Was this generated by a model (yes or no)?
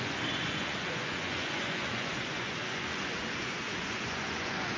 yes